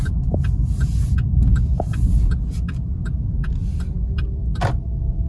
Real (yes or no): yes